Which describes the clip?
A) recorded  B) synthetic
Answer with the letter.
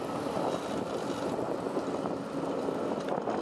A